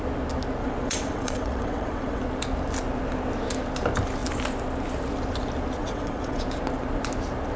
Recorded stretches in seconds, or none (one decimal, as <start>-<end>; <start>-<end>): 0.0-0.6; 2.2-5.8; 6.4-7.6